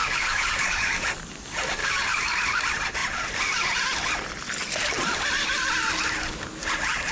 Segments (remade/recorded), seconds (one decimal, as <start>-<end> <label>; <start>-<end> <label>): 0.0-1.2 remade; 1.2-1.8 recorded; 1.8-2.6 remade; 2.6-7.1 recorded